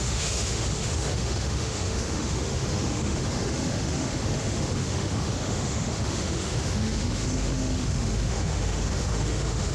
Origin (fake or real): fake